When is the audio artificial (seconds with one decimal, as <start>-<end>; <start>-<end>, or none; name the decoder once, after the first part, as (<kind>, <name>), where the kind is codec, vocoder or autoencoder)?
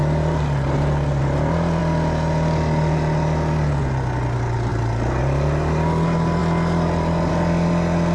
none